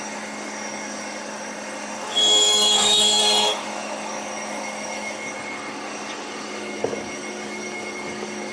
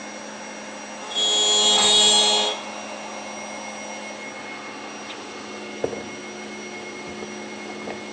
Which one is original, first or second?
second